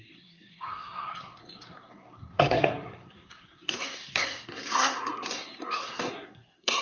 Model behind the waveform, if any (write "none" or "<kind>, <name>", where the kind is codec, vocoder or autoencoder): codec, SNAC